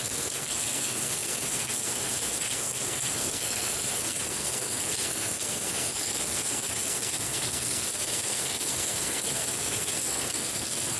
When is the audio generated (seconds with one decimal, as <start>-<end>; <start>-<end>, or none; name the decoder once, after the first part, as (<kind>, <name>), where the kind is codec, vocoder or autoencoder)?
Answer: 0.0-11.0 (codec, SNAC)